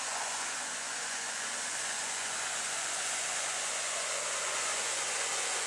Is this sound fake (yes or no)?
yes